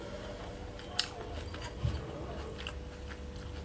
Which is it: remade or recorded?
recorded